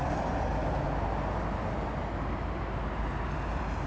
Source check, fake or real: real